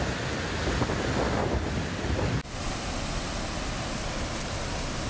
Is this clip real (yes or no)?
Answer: yes